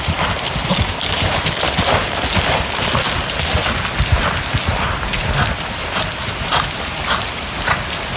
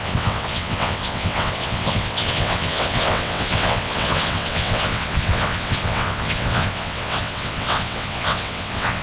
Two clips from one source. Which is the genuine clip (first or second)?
first